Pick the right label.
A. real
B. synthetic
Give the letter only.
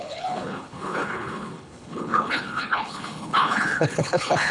B